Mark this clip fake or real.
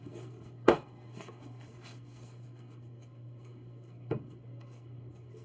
fake